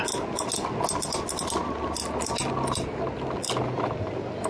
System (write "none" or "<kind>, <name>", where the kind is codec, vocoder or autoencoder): none